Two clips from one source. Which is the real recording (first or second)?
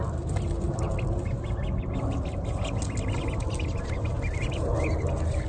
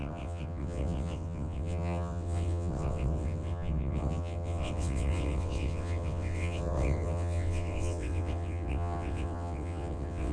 first